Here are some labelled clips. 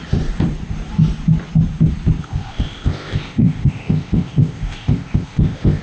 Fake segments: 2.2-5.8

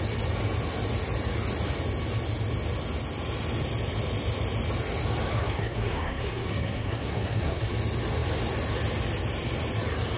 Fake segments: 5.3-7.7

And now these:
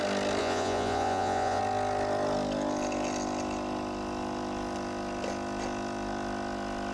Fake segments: 0.4-1.6